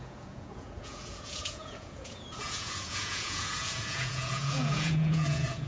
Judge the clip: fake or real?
fake